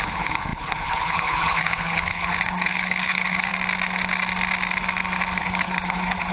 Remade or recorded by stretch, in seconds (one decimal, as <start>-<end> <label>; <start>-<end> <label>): 0.0-3.5 remade; 3.5-5.4 recorded; 5.4-6.3 remade